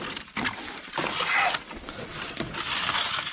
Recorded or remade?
recorded